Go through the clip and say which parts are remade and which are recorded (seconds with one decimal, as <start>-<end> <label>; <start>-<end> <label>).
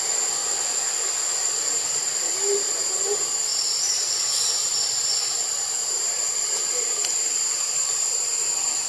0.0-0.4 remade; 0.4-1.6 recorded; 1.6-3.5 remade; 3.5-4.5 recorded; 4.5-8.9 remade